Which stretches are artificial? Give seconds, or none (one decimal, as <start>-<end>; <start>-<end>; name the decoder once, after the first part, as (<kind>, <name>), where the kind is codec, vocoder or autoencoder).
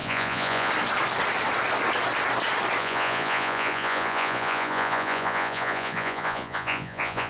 0.0-0.7 (vocoder, Vocos); 2.8-7.3